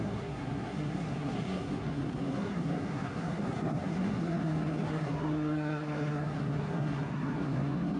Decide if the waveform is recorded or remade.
remade